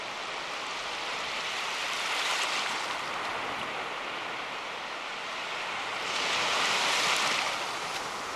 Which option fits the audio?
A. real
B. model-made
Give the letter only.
A